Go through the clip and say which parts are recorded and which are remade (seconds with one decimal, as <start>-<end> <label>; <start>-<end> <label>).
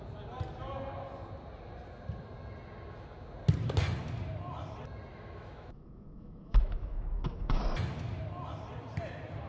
0.0-5.1 recorded; 5.1-7.6 remade; 7.6-9.5 recorded